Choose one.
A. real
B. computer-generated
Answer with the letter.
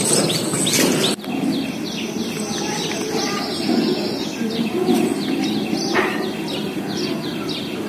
A